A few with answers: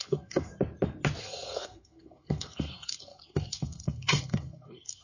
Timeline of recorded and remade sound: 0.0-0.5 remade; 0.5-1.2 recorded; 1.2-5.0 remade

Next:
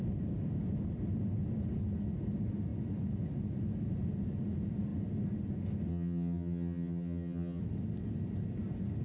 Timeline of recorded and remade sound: 0.0-5.9 recorded; 5.9-7.6 remade; 7.6-9.0 recorded

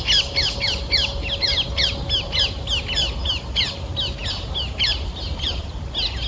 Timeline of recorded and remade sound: 0.0-6.3 recorded

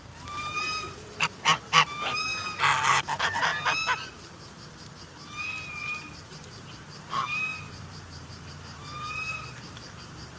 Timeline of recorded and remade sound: 0.0-2.3 remade; 2.3-2.9 recorded; 2.9-3.5 remade; 3.5-5.7 recorded; 5.7-10.4 remade

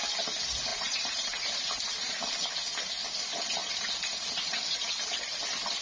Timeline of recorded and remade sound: 0.0-0.7 recorded; 0.7-2.3 remade; 2.3-3.6 recorded; 3.6-4.9 remade; 4.9-5.8 recorded

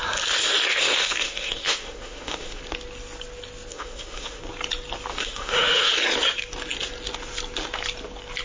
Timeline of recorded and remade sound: 0.0-0.7 recorded; 0.7-2.6 remade; 2.6-3.7 recorded; 3.7-4.4 remade; 4.4-5.1 recorded; 5.1-5.9 remade; 5.9-8.4 recorded